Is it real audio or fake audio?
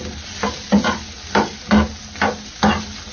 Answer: real